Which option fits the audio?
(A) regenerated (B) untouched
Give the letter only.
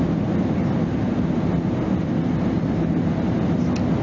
B